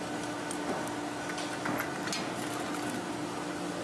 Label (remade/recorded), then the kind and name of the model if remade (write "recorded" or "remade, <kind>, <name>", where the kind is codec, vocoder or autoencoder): recorded